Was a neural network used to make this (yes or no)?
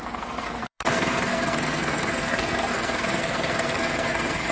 yes